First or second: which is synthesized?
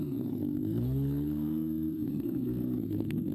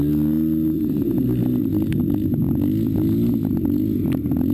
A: first